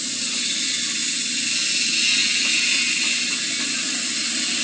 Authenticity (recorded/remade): recorded